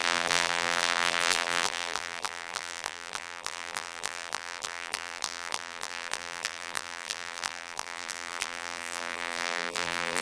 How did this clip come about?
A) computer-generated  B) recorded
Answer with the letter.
A